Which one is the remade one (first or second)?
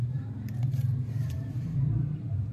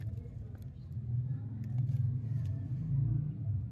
first